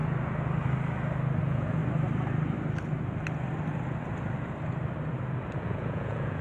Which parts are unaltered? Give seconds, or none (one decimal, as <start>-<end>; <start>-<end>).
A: 0.0-1.4; 1.8-5.6